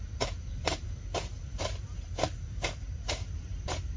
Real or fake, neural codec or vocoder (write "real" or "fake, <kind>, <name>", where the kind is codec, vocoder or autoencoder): fake, vocoder, BigVGAN v2